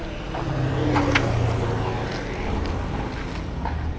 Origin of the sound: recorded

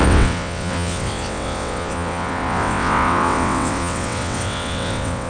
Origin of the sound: remade